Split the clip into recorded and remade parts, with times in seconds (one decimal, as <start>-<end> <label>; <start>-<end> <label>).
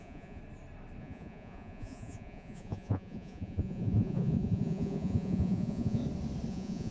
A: 0.0-0.4 remade; 0.4-1.0 recorded; 1.0-6.0 remade; 6.0-6.5 recorded; 6.5-6.9 remade